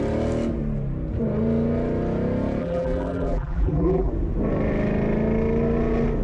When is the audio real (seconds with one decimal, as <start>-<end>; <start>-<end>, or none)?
0.0-2.6; 4.1-6.2